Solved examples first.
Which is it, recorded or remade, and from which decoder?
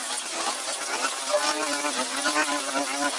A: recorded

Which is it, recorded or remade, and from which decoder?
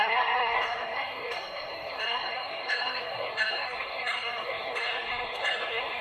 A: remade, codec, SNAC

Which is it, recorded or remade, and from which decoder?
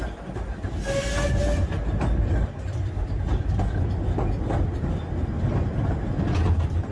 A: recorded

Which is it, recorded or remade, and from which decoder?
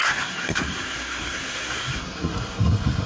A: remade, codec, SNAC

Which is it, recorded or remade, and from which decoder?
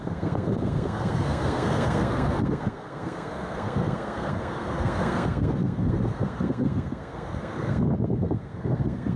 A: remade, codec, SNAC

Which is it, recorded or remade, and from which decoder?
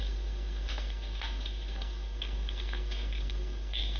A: remade, codec, SNAC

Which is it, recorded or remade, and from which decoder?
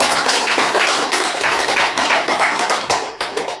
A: remade, codec, SNAC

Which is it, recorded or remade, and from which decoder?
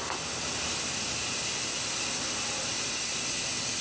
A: recorded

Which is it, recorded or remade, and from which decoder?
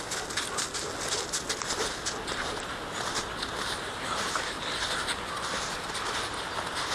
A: recorded